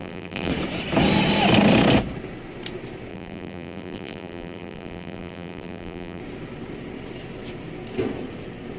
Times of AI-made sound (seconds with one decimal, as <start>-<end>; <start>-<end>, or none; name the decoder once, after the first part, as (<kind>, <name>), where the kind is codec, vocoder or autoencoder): 0.0-0.5 (vocoder, BigVGAN v2); 3.1-6.2